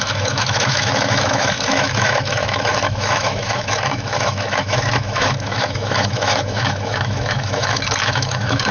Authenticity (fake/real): fake